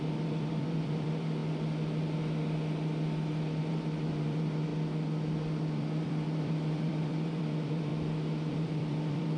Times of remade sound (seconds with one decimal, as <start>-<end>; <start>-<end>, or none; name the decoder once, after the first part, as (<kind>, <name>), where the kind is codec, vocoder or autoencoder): 0.0-1.4 (vocoder, BigVGAN v2); 3.6-4.7; 5.6-7.9; 8.5-9.4